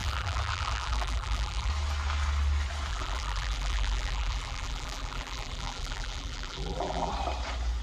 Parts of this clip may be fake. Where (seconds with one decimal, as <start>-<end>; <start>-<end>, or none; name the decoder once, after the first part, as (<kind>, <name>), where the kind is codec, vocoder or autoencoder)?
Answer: 0.0-1.7 (vocoder, BigVGAN v2); 2.9-7.1